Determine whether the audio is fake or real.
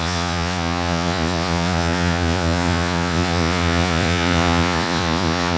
fake